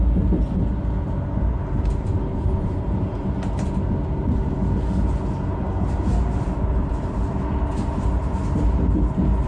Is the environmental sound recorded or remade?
recorded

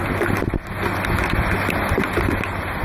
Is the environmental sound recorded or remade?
recorded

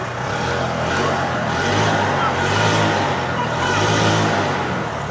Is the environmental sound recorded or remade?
recorded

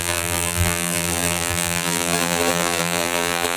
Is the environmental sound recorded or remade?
remade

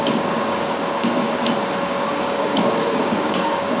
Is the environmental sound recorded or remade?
remade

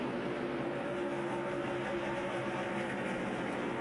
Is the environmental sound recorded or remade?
recorded